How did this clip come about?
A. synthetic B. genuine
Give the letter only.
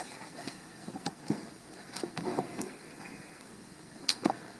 A